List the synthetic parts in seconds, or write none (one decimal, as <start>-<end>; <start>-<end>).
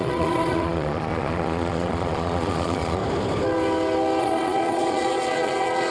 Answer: 0.0-3.0; 4.2-5.9